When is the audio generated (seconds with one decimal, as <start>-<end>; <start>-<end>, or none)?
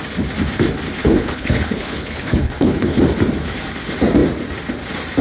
1.0-3.0